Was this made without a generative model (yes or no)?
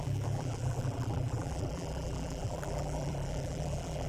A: no